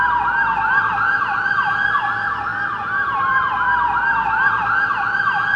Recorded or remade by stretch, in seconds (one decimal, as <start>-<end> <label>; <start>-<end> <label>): 0.0-5.6 recorded